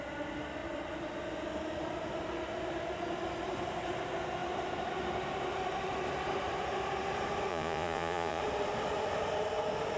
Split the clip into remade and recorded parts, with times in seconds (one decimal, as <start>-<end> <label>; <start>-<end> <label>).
0.0-7.5 recorded; 7.5-8.4 remade; 8.4-10.0 recorded